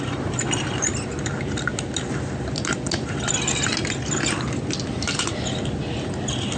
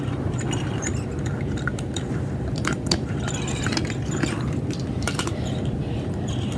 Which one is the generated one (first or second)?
second